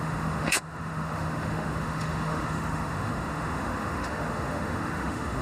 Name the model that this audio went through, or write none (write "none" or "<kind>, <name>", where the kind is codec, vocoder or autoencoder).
autoencoder, DAC-VAE